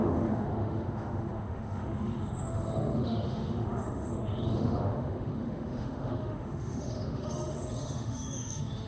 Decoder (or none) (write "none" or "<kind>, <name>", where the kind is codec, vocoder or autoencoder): autoencoder, DAC-VAE